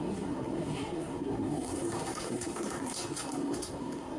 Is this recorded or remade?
remade